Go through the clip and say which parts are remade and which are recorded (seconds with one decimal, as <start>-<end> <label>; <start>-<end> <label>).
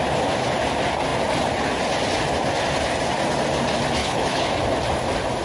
0.0-4.0 recorded; 4.0-4.5 remade; 4.5-5.4 recorded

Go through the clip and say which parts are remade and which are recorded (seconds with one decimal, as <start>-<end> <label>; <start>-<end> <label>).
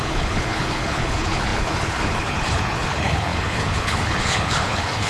0.0-5.1 remade